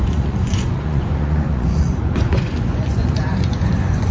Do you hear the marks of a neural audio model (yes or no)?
yes